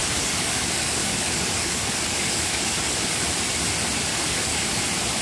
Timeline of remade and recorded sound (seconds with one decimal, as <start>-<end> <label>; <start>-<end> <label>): 0.0-3.1 remade; 3.1-4.1 recorded; 4.1-4.8 remade; 4.8-5.2 recorded